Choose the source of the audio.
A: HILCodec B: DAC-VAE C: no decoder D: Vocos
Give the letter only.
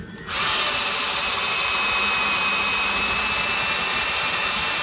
C